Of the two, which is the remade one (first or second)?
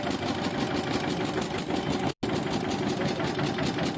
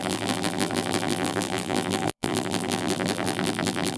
second